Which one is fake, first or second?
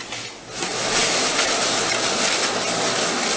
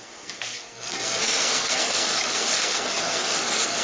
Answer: second